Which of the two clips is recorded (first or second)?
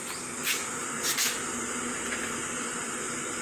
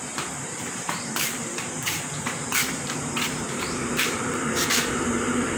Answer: first